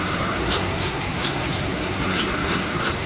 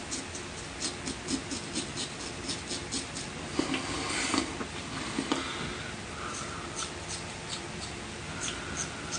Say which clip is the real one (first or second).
second